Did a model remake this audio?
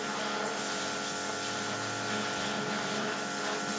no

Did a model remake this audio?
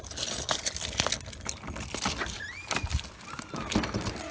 no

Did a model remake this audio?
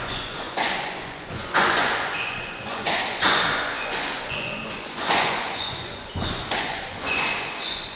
yes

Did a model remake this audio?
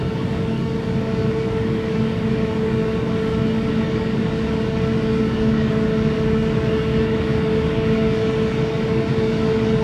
yes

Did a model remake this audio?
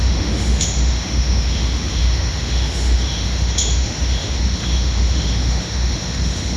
yes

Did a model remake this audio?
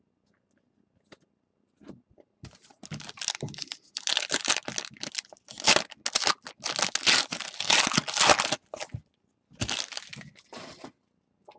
no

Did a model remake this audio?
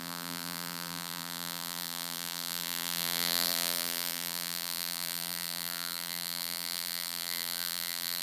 yes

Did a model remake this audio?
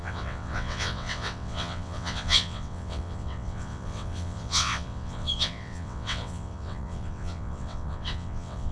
yes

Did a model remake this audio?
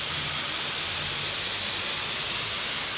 no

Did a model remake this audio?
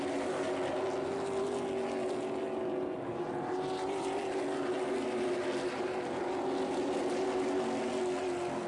no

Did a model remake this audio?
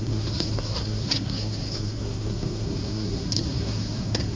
yes